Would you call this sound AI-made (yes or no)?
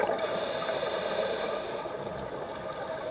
no